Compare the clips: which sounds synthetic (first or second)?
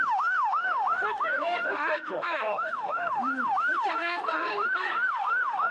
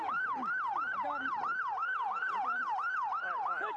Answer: first